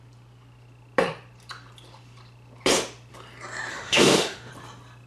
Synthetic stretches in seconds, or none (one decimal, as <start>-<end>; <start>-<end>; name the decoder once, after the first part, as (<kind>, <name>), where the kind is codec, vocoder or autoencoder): 3.7-4.5 (autoencoder, DAC-VAE)